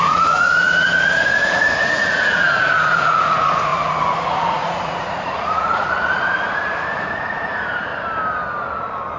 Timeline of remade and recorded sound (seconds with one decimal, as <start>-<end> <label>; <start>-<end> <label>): 0.0-7.9 remade; 7.9-9.2 recorded